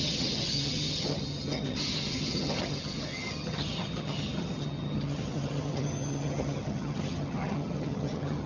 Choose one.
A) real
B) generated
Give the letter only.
B